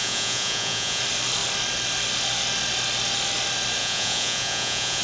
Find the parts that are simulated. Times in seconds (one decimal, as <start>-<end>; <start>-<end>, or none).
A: 0.0-1.0; 3.8-5.0